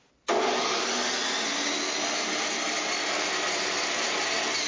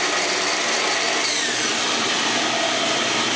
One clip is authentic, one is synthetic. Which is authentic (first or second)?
first